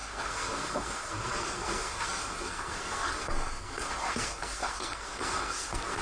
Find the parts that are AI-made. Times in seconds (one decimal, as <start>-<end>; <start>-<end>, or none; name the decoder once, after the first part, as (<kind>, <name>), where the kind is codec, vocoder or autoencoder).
0.0-6.0 (codec, SNAC)